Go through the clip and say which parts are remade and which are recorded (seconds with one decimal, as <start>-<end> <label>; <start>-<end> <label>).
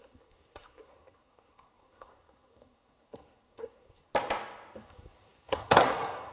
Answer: 0.0-4.1 remade; 4.1-4.8 recorded; 4.8-6.3 remade